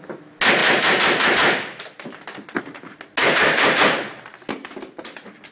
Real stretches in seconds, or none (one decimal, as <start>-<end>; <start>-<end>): 0.0-0.6; 2.6-3.2; 3.8-5.5